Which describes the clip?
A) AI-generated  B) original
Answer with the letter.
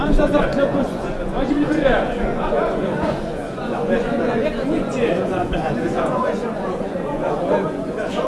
A